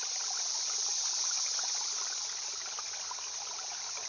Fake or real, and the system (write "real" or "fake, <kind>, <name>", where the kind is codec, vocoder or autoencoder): real